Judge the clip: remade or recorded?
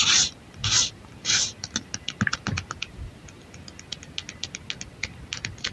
recorded